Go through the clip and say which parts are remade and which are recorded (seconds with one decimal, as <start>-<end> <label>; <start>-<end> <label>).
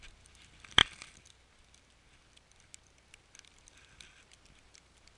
0.0-5.2 recorded